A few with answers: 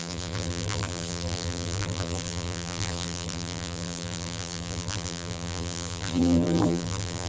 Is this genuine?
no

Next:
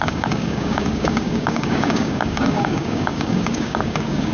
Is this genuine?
no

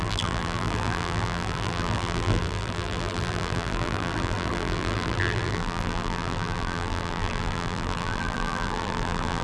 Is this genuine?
no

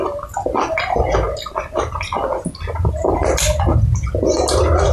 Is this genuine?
yes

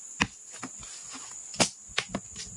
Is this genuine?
yes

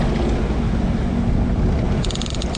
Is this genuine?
yes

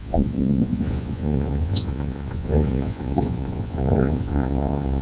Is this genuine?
no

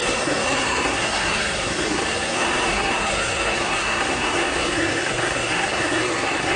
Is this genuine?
no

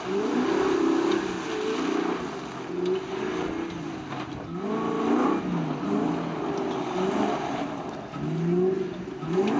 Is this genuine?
yes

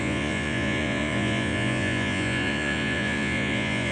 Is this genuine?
no